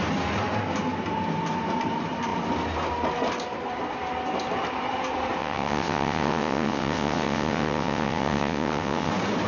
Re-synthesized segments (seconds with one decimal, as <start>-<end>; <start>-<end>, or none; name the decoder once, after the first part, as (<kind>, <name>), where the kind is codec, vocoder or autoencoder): 5.4-9.1 (vocoder, WaveNeXt)